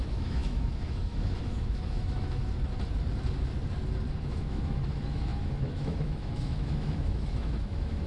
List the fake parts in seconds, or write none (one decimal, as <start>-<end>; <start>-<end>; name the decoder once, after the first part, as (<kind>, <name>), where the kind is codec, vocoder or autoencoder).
0.0-2.4 (autoencoder, DAC-VAE); 4.2-8.1